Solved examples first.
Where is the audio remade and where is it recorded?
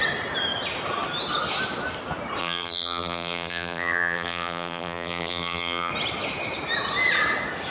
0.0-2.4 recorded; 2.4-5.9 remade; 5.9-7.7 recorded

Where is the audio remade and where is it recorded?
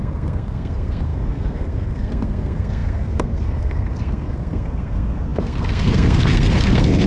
0.0-7.1 remade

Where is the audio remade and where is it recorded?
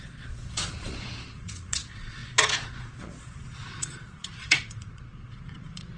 0.0-6.0 remade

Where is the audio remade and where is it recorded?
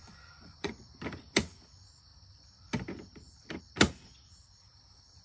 0.0-0.7 remade; 0.7-5.2 recorded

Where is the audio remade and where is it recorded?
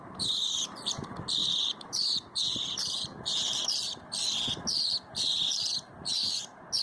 0.0-1.4 recorded; 1.4-3.7 remade; 3.7-6.8 recorded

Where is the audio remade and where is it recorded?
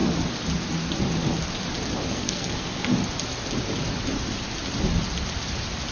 0.0-2.1 recorded; 2.1-3.0 remade; 3.0-5.9 recorded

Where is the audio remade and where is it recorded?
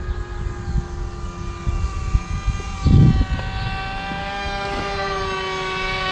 0.0-4.2 recorded; 4.2-4.8 remade; 4.8-6.1 recorded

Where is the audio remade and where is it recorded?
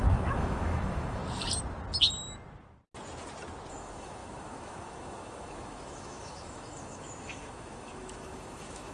0.0-1.2 remade; 1.2-3.7 recorded; 3.7-8.9 remade